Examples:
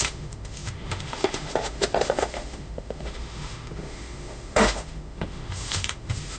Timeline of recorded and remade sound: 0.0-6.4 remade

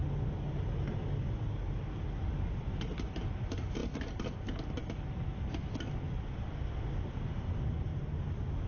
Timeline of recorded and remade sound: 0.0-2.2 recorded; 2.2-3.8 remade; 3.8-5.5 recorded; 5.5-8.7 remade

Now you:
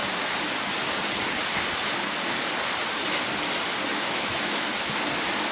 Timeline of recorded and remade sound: 0.0-3.9 recorded; 3.9-4.9 remade; 4.9-5.5 recorded